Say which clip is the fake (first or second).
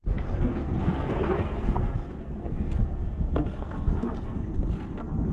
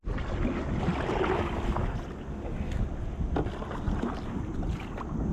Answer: first